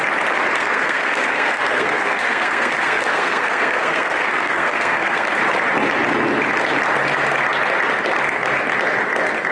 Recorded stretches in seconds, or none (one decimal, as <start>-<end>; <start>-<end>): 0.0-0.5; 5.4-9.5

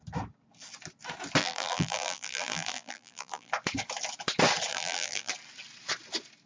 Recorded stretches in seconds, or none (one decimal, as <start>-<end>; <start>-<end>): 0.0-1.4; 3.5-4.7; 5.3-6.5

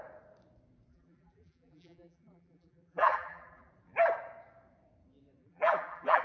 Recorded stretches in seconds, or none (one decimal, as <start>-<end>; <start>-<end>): 0.0-0.9; 3.7-5.4

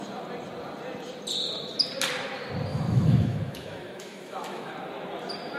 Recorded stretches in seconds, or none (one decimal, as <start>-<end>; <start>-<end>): 0.0-2.7; 4.7-5.6

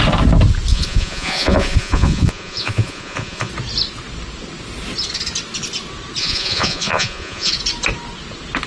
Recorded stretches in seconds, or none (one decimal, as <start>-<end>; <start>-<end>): 0.0-0.7; 3.5-6.2; 7.5-8.7